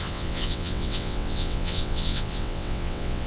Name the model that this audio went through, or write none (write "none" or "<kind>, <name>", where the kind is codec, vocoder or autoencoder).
vocoder, WaveNeXt